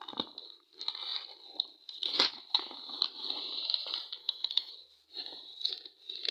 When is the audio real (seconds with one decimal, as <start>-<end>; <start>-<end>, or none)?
0.0-4.2; 4.7-6.3